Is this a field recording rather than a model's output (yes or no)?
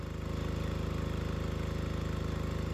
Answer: yes